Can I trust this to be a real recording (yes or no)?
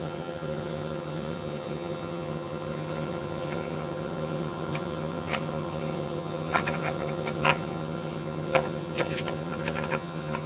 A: no